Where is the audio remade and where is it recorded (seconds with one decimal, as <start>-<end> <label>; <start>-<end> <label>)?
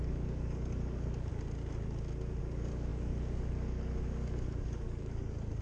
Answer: 0.0-1.3 remade; 1.3-2.4 recorded; 2.4-5.6 remade